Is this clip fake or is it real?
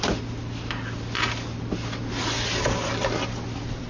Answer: real